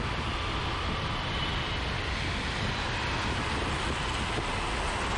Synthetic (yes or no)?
no